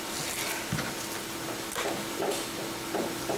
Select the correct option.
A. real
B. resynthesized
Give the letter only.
A